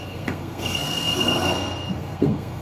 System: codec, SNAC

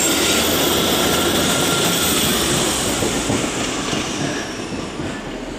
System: none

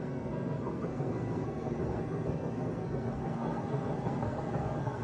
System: codec, SNAC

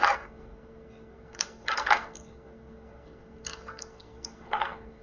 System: codec, SNAC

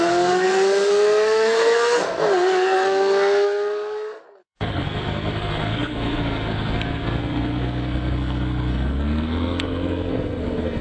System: codec, SNAC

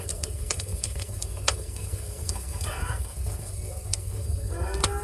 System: codec, SNAC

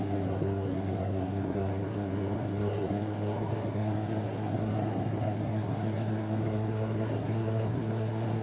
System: codec, SNAC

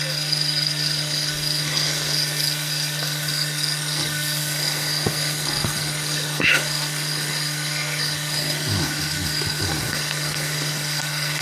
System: codec, SNAC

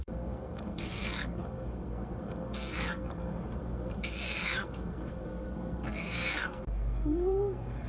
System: codec, SNAC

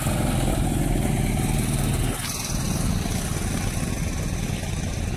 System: none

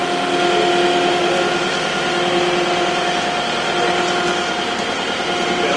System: none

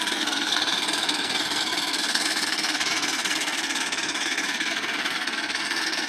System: codec, SNAC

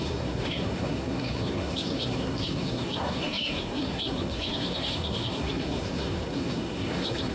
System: codec, SNAC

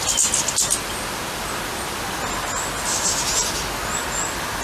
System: none